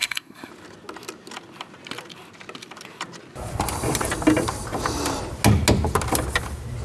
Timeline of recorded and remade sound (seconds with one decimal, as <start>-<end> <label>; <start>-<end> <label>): 0.0-0.5 remade; 0.5-6.8 recorded